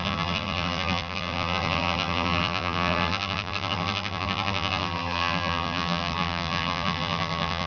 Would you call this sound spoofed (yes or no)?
yes